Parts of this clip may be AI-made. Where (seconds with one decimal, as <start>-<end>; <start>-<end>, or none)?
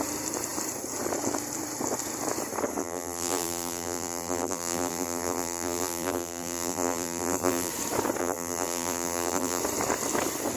2.8-7.7; 8.2-9.6